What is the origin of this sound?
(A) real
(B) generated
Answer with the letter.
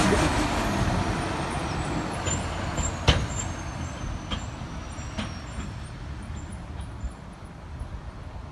A